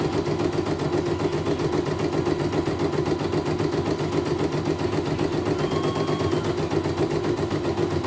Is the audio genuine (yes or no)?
yes